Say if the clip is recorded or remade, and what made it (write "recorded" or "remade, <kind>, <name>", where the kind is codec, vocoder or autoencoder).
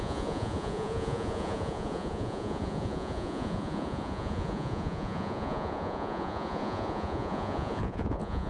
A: remade, vocoder, Vocos